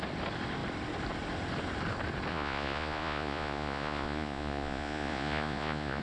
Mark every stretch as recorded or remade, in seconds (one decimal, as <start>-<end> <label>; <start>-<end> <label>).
0.0-2.3 recorded; 2.3-6.0 remade